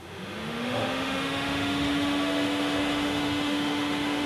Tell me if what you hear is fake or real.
fake